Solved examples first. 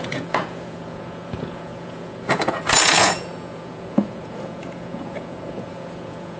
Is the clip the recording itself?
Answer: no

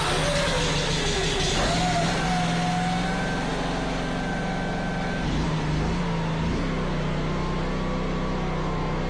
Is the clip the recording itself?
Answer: yes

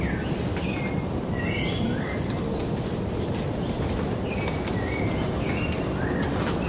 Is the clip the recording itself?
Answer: yes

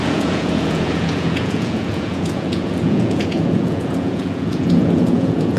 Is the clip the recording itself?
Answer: no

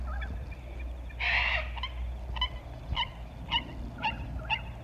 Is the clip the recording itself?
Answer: yes